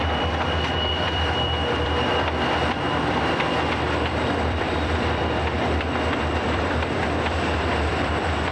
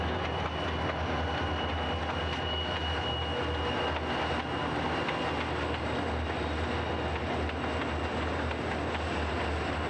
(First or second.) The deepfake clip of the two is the first